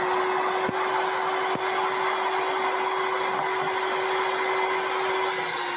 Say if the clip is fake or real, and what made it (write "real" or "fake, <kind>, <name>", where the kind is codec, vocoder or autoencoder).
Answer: real